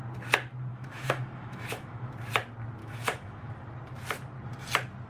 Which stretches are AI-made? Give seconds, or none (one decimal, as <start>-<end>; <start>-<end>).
0.7-2.1; 2.8-3.5